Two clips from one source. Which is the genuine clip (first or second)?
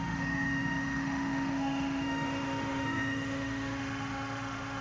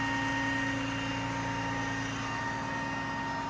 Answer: second